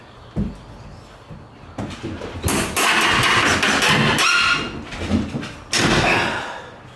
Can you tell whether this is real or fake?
real